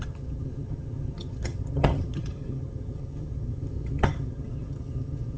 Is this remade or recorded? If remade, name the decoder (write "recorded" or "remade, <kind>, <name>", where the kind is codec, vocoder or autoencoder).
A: remade, vocoder, HiFi-GAN